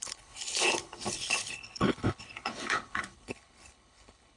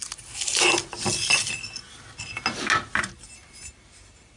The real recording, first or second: second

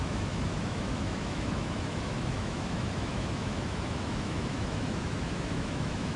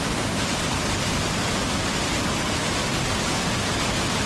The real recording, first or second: second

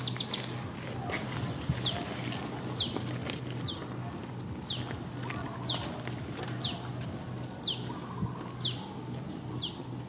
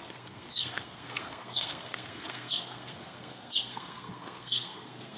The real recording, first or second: first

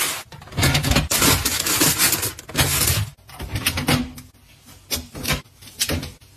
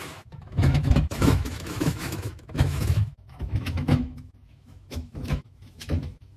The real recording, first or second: first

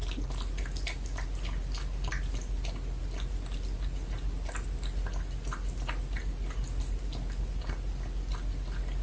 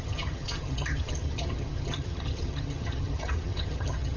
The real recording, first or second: first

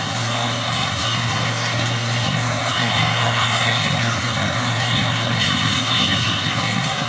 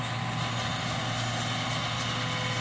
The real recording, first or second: second